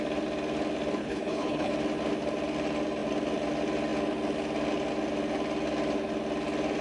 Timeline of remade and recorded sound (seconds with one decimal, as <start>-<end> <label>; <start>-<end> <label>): 0.0-1.0 recorded; 1.0-1.7 remade; 1.7-6.8 recorded

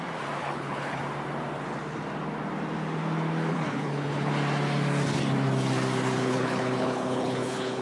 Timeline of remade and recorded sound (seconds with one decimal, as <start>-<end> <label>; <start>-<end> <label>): 0.0-0.4 recorded; 0.4-1.0 remade; 1.0-3.5 recorded; 3.5-4.3 remade; 4.3-6.2 recorded; 6.2-7.8 remade

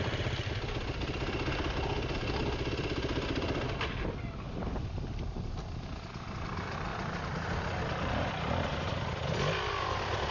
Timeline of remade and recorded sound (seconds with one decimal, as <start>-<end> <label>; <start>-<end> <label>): 0.0-10.3 recorded

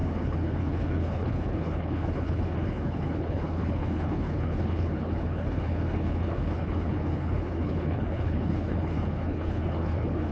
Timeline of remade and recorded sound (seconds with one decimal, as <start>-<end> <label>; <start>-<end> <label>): 0.0-10.3 remade

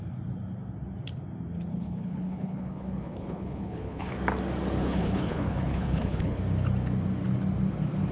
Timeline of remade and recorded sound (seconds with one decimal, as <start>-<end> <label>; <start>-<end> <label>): 0.0-1.7 recorded; 1.7-4.1 remade; 4.1-4.8 recorded; 4.8-6.4 remade; 6.4-8.1 recorded

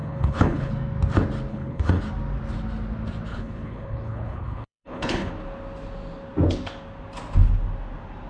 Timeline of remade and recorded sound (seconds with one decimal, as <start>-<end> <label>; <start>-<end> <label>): 0.0-0.7 remade; 0.7-1.5 recorded; 1.5-2.0 remade; 2.0-3.3 recorded; 3.3-5.3 remade; 5.3-8.3 recorded